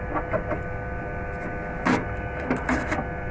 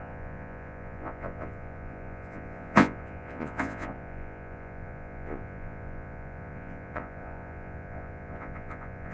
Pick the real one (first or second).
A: first